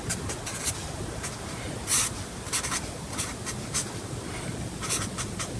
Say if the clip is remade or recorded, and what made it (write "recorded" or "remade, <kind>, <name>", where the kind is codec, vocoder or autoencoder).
recorded